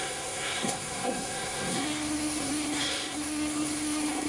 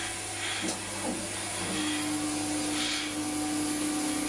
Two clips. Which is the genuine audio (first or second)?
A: second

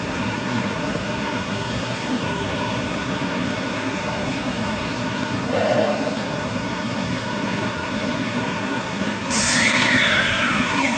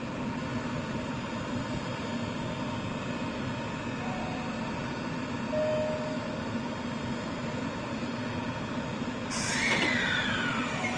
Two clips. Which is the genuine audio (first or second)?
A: second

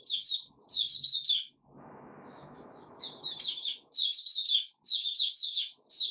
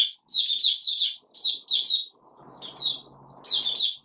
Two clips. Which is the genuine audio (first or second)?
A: second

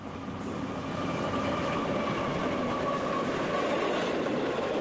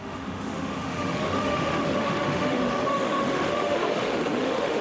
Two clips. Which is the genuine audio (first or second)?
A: first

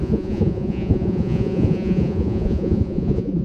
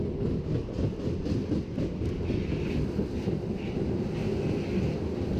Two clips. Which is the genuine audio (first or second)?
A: second